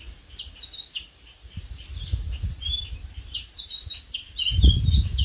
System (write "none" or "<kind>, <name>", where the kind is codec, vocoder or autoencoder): none